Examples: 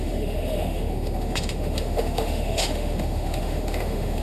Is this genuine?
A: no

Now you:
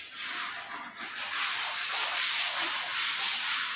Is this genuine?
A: yes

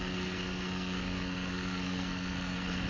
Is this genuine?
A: no